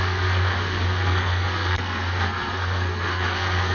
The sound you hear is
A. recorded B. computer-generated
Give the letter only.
B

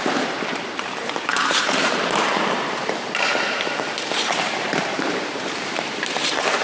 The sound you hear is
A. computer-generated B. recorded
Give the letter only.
A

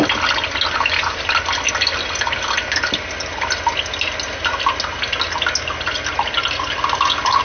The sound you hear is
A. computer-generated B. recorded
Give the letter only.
B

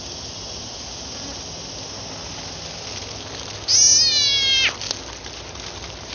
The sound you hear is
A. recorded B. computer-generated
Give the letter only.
A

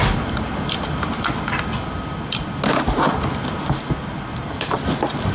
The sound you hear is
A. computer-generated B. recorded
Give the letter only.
B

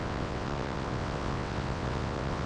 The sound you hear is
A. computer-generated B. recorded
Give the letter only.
A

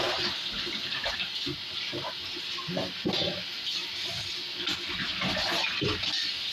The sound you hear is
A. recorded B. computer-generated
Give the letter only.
A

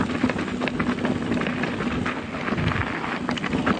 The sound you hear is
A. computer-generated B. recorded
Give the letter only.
B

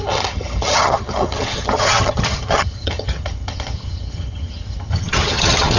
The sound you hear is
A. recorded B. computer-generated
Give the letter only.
B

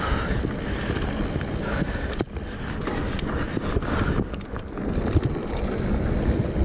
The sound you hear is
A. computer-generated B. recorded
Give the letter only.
B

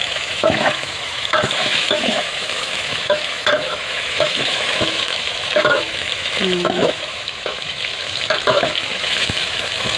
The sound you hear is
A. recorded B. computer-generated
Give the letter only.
B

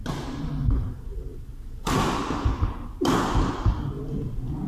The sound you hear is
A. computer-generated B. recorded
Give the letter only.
B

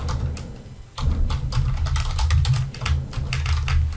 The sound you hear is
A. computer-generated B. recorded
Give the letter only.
B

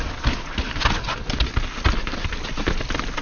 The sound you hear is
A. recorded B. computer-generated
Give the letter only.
A